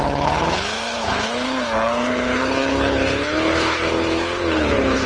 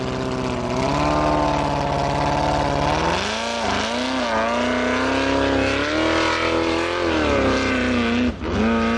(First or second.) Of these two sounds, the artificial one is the first